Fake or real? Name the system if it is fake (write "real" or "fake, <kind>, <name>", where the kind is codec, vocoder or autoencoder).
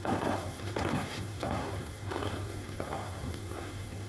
fake, codec, SNAC